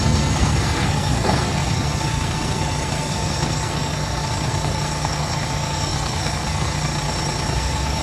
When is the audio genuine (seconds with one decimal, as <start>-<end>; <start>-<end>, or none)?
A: 6.9-7.5